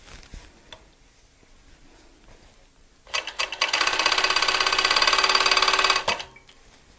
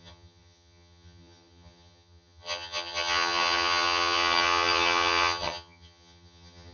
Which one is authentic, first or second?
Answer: first